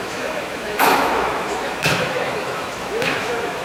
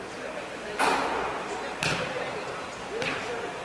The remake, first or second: first